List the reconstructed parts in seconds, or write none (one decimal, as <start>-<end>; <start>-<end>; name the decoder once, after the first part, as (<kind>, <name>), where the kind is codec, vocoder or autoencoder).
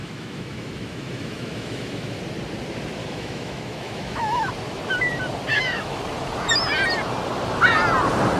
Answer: 0.0-2.2 (autoencoder, DAC-VAE); 3.0-4.5; 5.5-6.0